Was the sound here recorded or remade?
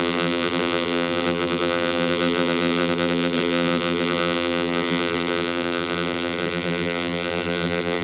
remade